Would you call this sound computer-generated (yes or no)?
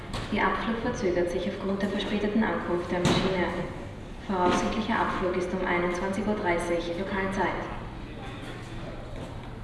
no